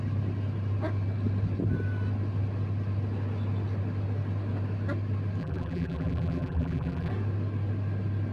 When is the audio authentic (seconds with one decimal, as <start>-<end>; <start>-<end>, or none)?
0.0-5.4; 7.1-8.3